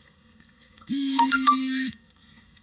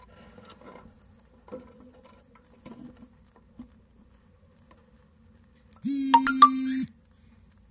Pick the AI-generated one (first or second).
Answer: first